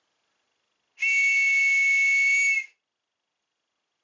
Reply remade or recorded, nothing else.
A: recorded